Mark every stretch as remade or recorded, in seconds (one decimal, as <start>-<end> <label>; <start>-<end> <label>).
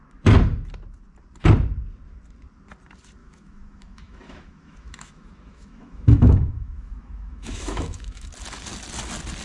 0.0-3.2 recorded; 3.2-8.3 remade; 8.3-9.4 recorded